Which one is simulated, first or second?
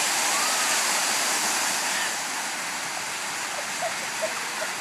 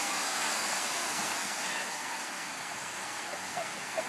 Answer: second